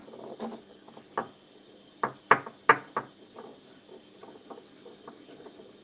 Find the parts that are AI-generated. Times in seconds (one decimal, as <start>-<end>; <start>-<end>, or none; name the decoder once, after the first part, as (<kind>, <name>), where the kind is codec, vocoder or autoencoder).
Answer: none